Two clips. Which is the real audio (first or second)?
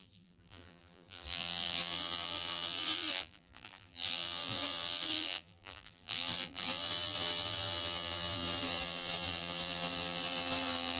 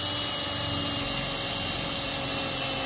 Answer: second